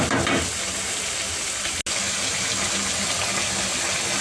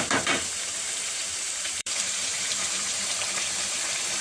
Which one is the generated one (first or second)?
second